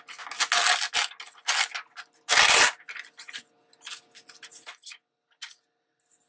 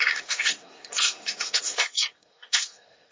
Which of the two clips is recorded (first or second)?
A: first